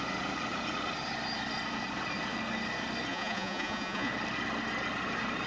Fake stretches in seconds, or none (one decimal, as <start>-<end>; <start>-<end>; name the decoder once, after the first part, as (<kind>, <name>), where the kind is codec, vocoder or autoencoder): 3.1-4.1 (vocoder, Vocos)